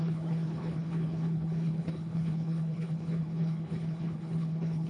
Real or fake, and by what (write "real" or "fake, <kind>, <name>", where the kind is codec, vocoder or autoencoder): fake, codec, HILCodec